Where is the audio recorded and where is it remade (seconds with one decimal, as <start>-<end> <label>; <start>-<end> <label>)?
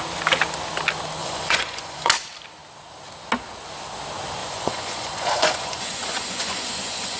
0.0-1.2 recorded; 1.2-2.1 remade; 2.1-4.4 recorded; 4.4-7.2 remade